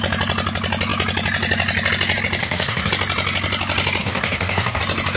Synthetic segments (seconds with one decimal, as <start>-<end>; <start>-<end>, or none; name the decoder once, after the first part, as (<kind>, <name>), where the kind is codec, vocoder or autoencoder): 2.4-2.9 (codec, SNAC); 4.0-4.8